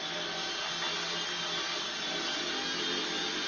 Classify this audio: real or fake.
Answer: real